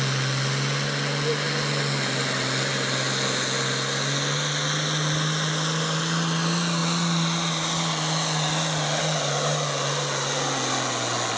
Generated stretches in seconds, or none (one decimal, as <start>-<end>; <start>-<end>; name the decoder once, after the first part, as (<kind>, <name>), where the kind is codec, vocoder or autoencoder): none